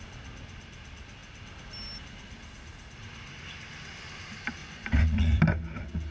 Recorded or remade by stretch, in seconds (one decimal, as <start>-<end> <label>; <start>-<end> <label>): 0.0-4.6 recorded; 4.6-5.4 remade; 5.4-6.1 recorded